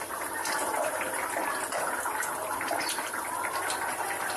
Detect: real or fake real